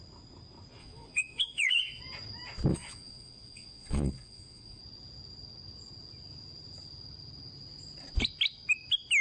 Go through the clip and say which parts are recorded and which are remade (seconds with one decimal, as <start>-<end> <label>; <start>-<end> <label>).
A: 0.0-0.8 recorded; 0.8-2.0 remade; 2.0-2.7 recorded; 2.7-4.8 remade; 4.8-9.2 recorded